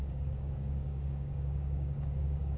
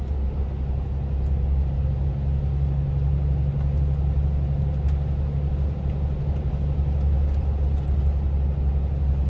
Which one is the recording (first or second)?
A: second